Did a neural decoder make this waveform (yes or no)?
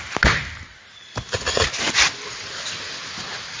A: no